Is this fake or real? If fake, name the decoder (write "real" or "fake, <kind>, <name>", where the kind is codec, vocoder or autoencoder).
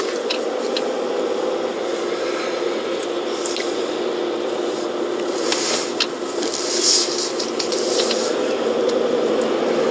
real